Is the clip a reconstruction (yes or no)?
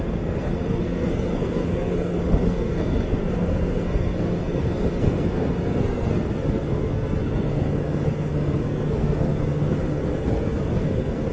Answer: yes